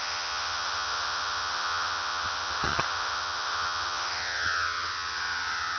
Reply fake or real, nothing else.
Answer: fake